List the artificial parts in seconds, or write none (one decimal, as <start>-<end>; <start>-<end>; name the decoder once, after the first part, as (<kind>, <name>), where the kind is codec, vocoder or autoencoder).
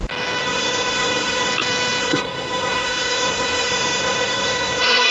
0.4-1.5 (codec, SNAC); 2.0-5.1